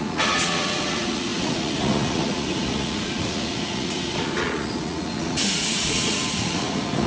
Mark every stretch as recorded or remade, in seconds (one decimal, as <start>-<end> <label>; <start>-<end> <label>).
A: 0.0-7.1 remade